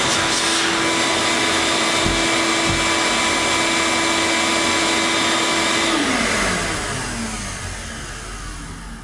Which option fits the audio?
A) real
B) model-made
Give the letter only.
A